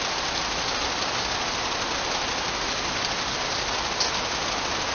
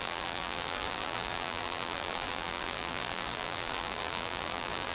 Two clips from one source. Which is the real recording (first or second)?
first